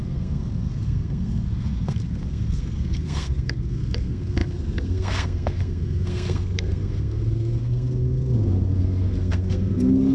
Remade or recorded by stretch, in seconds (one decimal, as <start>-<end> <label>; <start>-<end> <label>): 0.0-10.1 remade